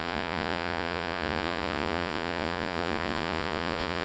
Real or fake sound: fake